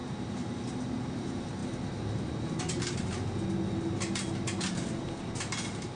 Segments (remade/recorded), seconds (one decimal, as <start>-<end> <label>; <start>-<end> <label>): 0.0-6.0 recorded